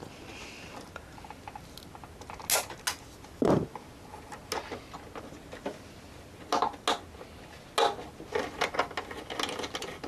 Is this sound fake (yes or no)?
no